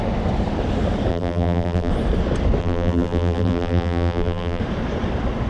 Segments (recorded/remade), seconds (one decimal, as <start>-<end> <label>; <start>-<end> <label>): 0.0-1.1 recorded; 1.1-1.9 remade; 1.9-2.6 recorded; 2.6-4.6 remade; 4.6-5.5 recorded